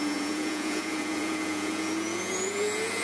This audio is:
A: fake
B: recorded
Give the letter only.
A